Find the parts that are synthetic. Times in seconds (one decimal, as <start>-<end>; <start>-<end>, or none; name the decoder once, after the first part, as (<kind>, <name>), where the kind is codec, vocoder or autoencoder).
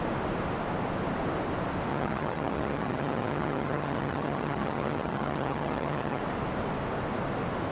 1.9-6.2 (vocoder, HiFi-GAN)